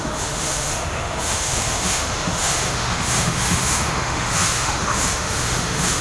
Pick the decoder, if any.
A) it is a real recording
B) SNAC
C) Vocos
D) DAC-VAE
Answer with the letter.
D